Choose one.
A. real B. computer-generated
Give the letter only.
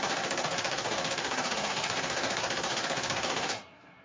B